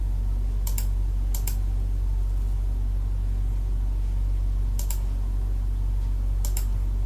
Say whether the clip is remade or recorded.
recorded